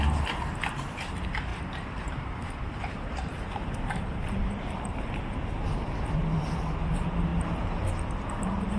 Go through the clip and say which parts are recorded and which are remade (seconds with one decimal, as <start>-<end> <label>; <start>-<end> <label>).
0.0-1.5 recorded; 1.5-5.1 remade; 5.1-8.8 recorded